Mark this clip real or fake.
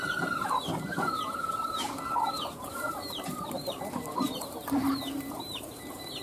fake